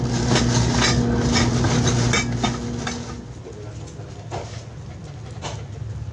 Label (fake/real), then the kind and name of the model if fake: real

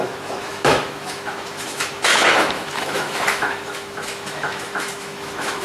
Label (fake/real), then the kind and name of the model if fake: fake, autoencoder, DAC-VAE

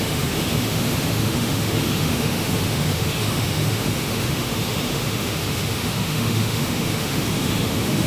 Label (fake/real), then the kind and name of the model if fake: fake, autoencoder, DAC-VAE